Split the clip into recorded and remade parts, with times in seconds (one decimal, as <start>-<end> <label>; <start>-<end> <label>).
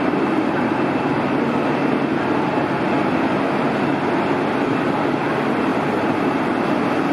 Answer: 0.0-5.7 recorded; 5.7-6.4 remade; 6.4-7.1 recorded